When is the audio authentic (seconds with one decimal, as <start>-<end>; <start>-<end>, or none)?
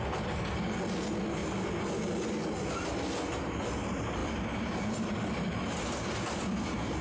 0.0-7.0